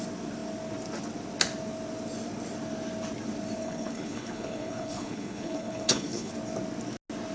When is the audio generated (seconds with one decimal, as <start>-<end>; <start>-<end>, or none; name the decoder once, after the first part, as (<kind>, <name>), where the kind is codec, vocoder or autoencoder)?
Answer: 3.6-6.3 (codec, HILCodec)

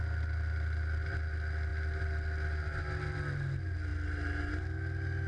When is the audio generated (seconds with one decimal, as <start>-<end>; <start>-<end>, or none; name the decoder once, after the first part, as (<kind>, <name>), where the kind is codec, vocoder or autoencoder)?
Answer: none

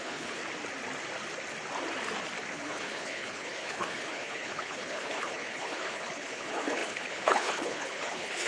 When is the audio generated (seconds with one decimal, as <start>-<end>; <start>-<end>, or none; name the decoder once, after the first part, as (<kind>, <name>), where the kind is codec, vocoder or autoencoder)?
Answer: 0.0-0.4 (codec, HILCodec); 2.5-8.5

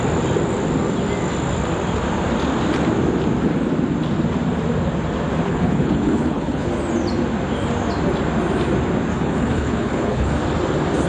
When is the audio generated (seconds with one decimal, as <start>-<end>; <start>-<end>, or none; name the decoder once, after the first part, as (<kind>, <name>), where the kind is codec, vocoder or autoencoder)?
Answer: 5.5-6.7 (codec, HILCodec); 9.1-10.3

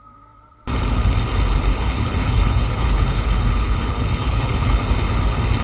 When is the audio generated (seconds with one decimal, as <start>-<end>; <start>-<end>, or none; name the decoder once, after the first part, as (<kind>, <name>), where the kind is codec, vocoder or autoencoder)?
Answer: 1.7-4.8 (codec, HILCodec)

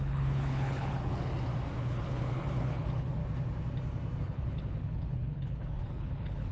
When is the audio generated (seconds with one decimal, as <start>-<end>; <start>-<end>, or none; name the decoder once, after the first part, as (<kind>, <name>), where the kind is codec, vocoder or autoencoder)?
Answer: 0.0-1.3 (codec, HILCodec); 1.8-3.2; 4.2-6.5

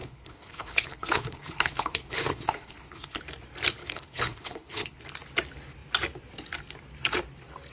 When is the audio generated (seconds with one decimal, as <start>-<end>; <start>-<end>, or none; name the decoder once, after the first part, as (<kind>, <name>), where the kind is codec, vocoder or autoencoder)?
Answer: 0.0-3.2 (codec, HILCodec); 3.8-5.0

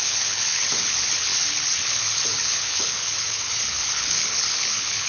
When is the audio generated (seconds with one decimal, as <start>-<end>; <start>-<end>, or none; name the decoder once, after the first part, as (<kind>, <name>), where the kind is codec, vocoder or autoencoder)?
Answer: 0.0-5.1 (codec, HILCodec)